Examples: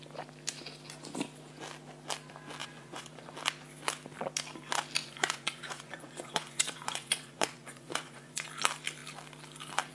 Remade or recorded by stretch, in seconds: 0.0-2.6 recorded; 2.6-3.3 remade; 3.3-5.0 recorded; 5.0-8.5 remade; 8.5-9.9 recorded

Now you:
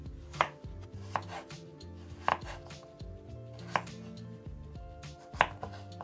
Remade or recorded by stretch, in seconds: 0.0-6.0 recorded

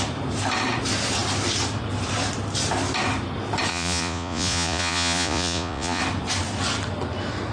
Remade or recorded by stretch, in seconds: 0.0-3.7 recorded; 3.7-6.0 remade; 6.0-7.5 recorded

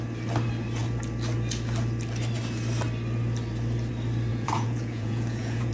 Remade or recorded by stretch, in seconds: 0.0-4.3 recorded; 4.3-5.7 remade

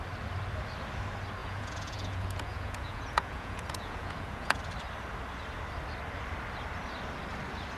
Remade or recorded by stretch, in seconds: 0.0-1.4 recorded; 1.4-4.6 remade; 4.6-7.8 recorded

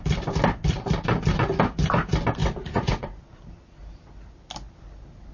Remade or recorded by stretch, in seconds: 0.0-2.4 recorded; 2.4-3.2 remade; 3.2-5.3 recorded